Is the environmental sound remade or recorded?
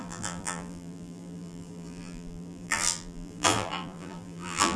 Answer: remade